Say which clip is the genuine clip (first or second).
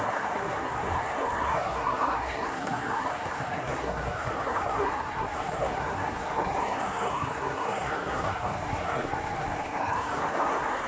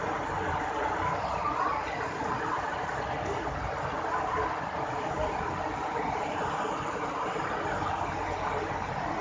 second